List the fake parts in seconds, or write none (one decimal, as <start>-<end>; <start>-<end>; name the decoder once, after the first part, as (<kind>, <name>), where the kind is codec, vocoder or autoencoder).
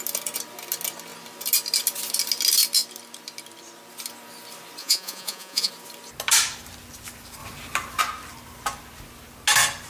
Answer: 4.8-5.7 (vocoder, Vocos)